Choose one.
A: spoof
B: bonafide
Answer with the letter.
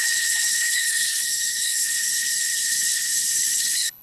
A